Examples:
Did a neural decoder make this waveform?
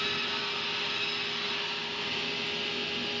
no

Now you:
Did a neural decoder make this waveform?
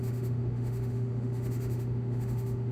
yes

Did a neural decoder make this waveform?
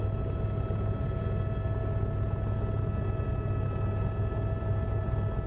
no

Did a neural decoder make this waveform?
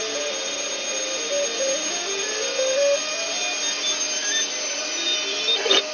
no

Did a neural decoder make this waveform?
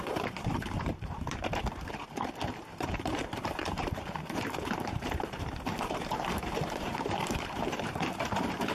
yes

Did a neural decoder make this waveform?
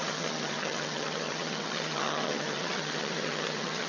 yes